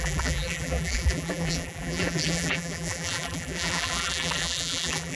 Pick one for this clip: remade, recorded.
remade